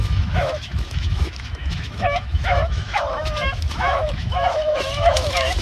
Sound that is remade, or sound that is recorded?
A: remade